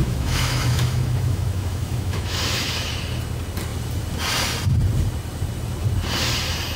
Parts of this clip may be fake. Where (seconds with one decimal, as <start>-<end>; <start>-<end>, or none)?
0.0-2.9